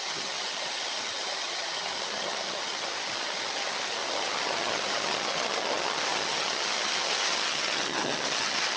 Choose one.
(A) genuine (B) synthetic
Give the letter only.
B